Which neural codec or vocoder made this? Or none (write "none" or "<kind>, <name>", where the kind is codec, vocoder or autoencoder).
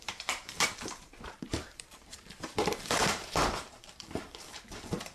vocoder, BigVGAN v2